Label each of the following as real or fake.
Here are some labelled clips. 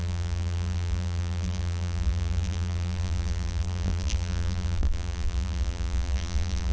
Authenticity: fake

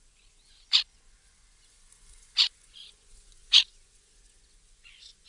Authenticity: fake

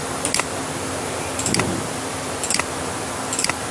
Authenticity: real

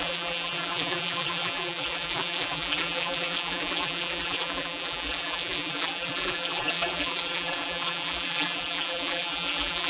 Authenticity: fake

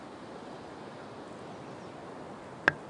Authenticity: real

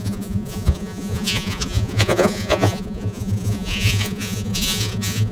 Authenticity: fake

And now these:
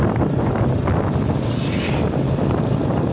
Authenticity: fake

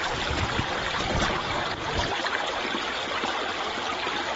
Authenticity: real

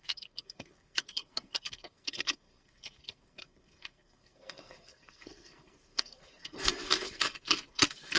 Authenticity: fake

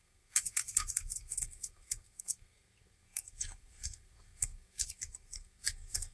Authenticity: fake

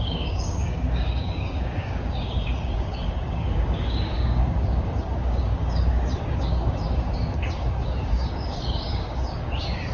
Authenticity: fake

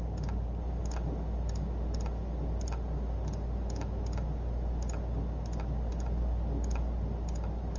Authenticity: real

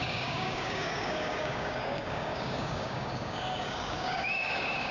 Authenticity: fake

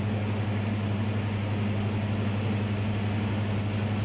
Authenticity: real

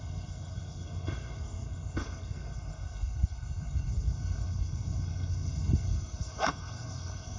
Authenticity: fake